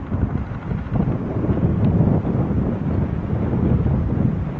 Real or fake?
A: real